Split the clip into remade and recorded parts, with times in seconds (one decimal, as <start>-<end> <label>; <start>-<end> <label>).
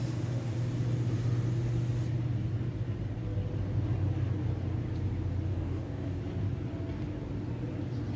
0.0-5.5 recorded; 5.5-6.2 remade; 6.2-8.2 recorded